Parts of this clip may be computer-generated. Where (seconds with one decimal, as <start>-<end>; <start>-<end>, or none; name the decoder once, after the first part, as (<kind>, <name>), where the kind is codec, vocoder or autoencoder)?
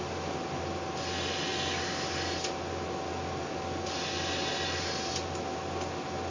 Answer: none